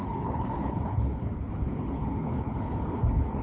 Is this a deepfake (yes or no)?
yes